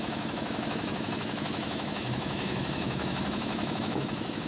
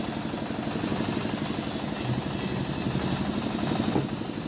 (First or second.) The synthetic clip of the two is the first